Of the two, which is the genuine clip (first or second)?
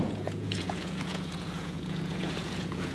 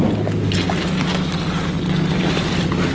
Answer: second